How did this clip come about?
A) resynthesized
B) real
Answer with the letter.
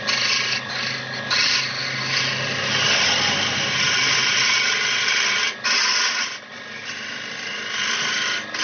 B